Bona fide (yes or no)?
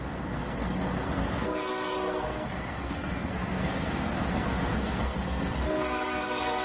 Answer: no